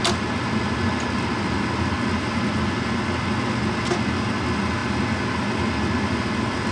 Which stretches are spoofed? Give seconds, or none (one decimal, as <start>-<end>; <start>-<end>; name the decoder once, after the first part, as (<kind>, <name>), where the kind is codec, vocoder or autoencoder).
none